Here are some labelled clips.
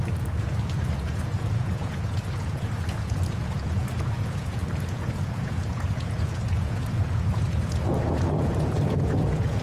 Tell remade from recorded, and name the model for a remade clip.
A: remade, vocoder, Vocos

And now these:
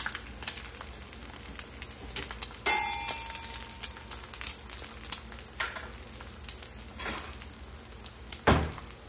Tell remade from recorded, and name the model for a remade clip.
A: recorded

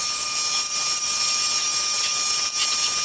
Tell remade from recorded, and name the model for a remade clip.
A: recorded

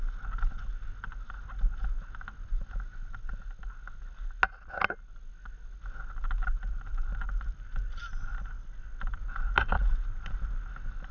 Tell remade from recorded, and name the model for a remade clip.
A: recorded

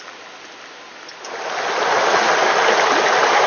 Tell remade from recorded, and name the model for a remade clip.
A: recorded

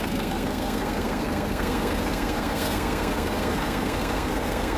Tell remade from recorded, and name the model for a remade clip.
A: remade, codec, SNAC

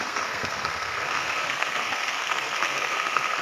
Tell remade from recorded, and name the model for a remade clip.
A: remade, codec, SNAC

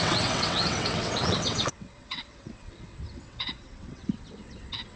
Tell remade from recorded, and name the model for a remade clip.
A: remade, vocoder, WaveNeXt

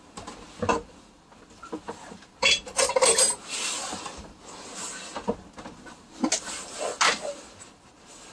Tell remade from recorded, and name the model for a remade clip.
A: recorded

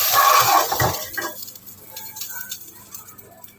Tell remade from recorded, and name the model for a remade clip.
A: remade, vocoder, BigVGAN v2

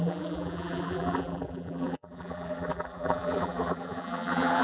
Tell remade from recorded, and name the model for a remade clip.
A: remade, vocoder, BigVGAN v2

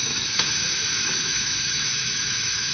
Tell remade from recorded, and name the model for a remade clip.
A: remade, autoencoder, DAC-VAE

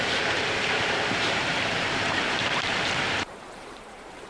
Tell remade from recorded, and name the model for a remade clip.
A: remade, vocoder, BigVGAN v2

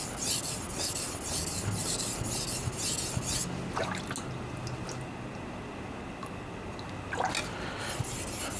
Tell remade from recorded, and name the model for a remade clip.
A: recorded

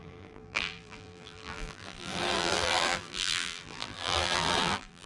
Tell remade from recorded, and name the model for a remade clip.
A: remade, vocoder, BigVGAN v2